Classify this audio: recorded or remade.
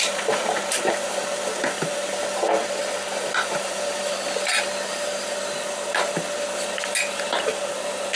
recorded